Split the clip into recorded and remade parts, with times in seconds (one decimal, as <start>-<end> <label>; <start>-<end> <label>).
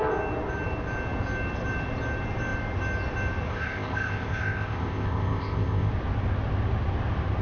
0.0-3.5 recorded; 3.5-5.9 remade; 5.9-7.4 recorded